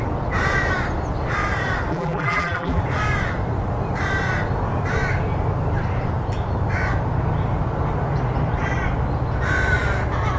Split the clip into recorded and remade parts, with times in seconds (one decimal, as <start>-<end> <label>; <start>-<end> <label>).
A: 0.0-1.9 recorded; 1.9-2.8 remade; 2.8-10.4 recorded

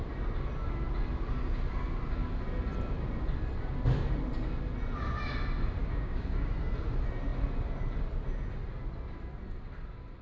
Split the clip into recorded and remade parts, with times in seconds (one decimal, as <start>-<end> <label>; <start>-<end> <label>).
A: 0.0-5.8 recorded; 5.8-6.5 remade; 6.5-10.2 recorded